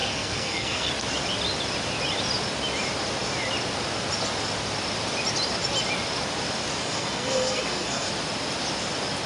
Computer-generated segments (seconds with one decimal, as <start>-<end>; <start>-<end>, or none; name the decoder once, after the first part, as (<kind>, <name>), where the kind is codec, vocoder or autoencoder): 0.0-0.9 (codec, SNAC); 6.8-8.1